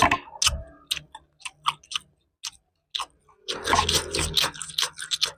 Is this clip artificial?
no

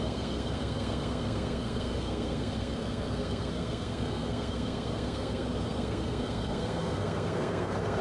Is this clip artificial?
yes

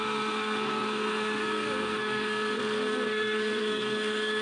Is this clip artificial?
yes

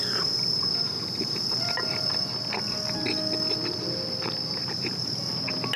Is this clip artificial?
no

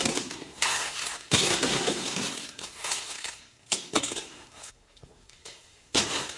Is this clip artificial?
yes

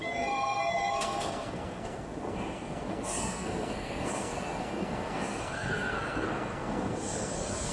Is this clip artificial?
yes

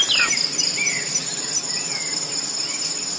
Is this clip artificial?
no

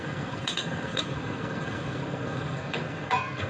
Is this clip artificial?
yes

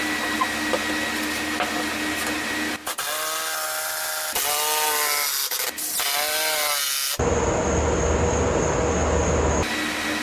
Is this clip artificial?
no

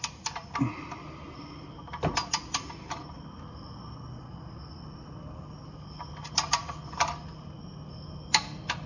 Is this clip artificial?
no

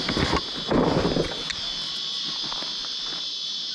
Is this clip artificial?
no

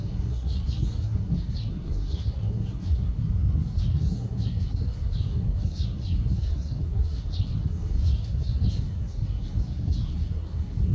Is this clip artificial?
yes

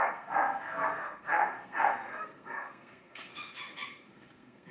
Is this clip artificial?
yes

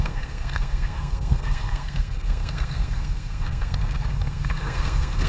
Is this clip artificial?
yes